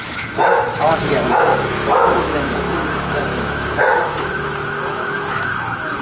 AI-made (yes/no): yes